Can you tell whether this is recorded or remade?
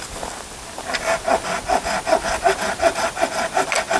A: recorded